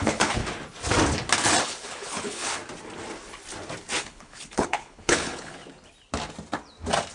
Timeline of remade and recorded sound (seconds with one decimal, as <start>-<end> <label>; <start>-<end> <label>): 0.0-0.4 remade; 0.4-1.6 recorded; 1.6-2.6 remade; 2.6-4.0 recorded; 4.0-5.6 remade; 5.6-7.1 recorded